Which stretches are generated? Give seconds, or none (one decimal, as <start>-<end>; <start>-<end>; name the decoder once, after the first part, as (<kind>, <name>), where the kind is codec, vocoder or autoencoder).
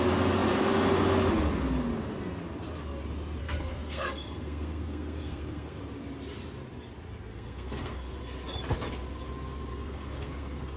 3.4-5.8 (codec, SNAC); 7.3-8.2; 9.7-10.8